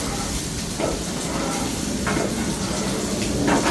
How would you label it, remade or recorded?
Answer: recorded